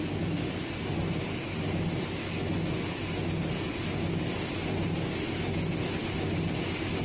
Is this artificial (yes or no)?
no